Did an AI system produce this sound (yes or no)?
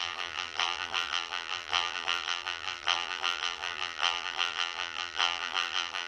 yes